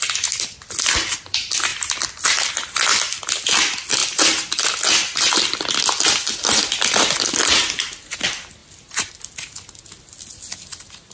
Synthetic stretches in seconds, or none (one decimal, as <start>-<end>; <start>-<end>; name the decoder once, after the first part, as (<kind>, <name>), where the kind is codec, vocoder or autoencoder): none